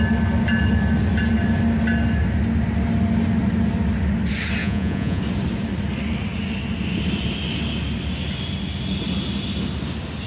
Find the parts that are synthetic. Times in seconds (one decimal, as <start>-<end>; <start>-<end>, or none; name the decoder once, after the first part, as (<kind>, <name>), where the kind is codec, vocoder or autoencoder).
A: 4.6-5.2 (vocoder, Vocos)